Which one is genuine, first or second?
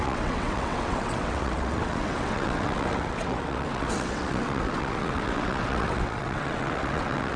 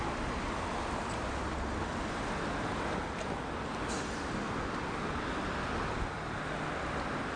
second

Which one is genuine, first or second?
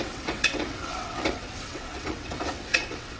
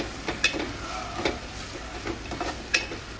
second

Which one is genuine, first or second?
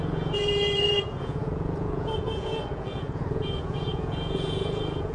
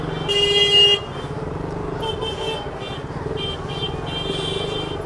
second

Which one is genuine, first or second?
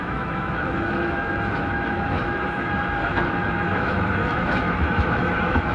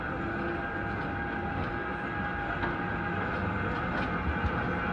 second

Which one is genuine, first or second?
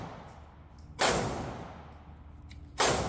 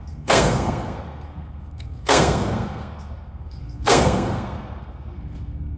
first